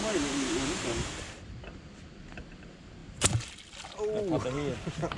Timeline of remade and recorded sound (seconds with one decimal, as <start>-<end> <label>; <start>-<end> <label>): 0.0-5.2 recorded